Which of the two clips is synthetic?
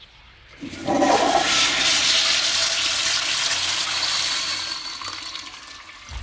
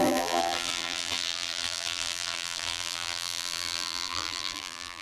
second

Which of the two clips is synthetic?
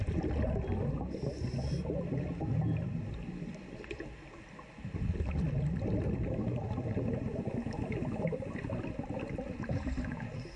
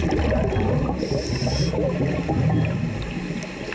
first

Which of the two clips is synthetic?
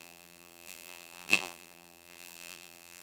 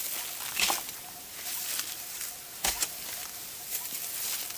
first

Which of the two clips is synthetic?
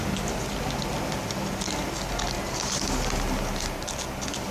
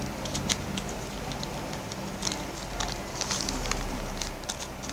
second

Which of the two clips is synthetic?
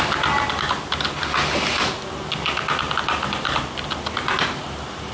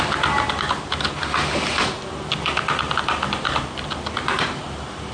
second